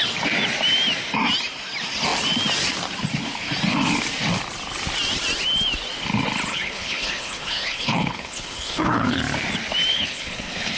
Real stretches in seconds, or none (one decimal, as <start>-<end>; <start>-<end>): 0.0-6.5; 9.2-9.9